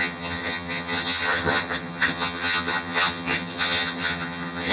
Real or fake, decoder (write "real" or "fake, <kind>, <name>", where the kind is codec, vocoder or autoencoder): fake, vocoder, HiFi-GAN